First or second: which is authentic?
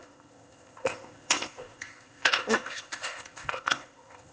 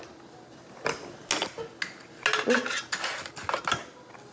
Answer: second